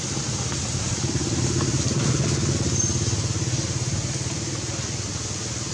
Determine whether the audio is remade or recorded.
recorded